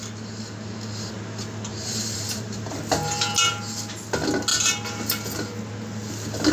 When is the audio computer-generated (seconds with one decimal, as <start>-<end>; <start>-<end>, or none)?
1.7-2.8